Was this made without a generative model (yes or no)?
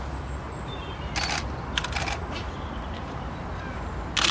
yes